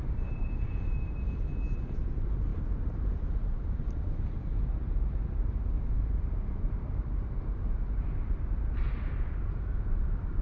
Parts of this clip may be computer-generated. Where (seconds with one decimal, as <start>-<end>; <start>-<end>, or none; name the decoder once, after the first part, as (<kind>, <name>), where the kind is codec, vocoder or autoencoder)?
2.5-7.7 (vocoder, BigVGAN v2)